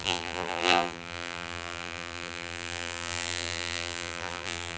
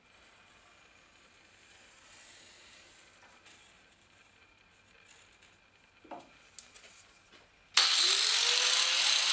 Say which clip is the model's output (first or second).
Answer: first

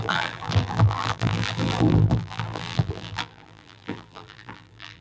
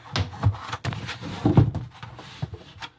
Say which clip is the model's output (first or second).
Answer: first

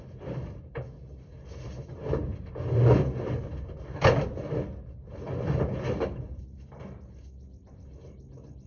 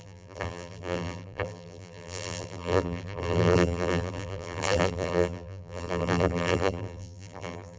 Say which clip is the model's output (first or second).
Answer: second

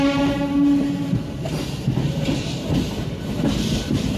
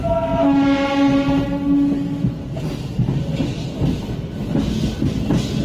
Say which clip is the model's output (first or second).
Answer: first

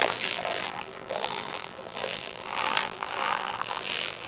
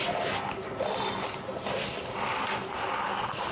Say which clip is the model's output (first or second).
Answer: first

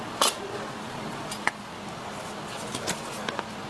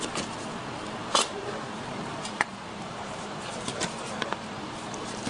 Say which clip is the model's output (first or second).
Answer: second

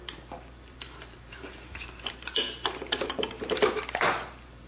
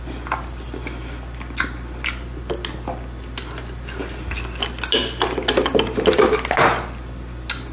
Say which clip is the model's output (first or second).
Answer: first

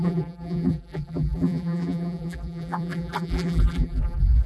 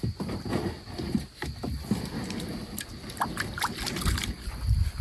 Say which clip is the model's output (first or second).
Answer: first